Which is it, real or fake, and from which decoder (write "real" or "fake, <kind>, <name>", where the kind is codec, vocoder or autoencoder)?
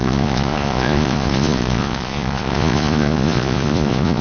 fake, vocoder, Vocos